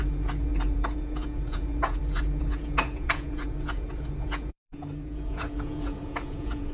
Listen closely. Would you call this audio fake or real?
fake